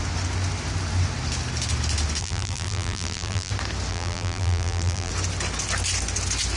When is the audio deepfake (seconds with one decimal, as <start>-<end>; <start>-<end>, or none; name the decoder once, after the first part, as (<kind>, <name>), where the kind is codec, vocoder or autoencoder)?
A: 2.2-3.5 (vocoder, BigVGAN v2); 3.9-5.1